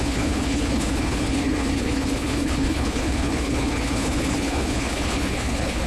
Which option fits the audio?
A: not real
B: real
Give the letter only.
A